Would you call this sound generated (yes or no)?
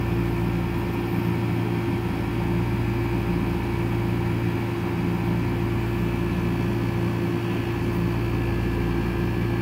no